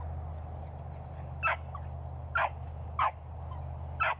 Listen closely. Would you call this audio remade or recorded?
recorded